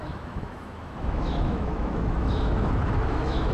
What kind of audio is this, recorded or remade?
remade